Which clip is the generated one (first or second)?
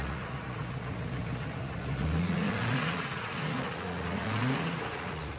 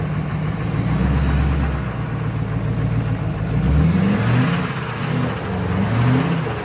first